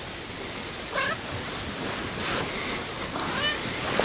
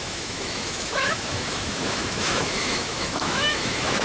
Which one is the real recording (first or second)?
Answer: first